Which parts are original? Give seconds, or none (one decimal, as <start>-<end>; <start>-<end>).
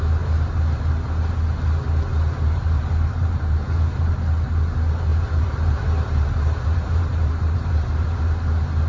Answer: 0.0-2.1; 4.1-5.1; 8.3-8.9